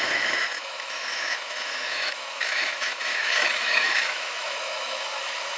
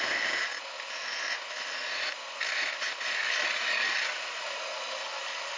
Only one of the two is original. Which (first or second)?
second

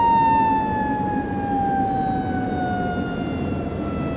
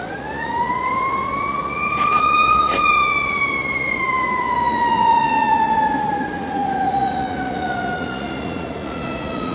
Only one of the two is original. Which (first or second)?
first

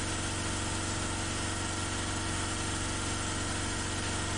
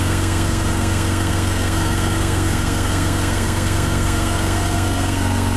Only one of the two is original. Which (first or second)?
first